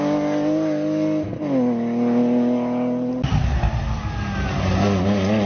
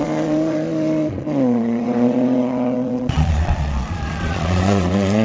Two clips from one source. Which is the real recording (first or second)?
first